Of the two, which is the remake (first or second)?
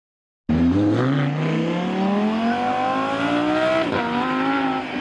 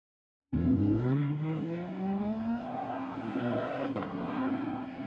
second